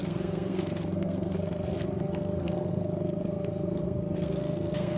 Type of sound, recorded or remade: remade